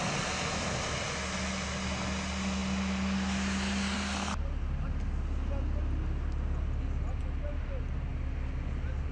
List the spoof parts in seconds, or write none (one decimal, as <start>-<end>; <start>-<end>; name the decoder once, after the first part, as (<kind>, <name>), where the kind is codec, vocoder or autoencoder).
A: none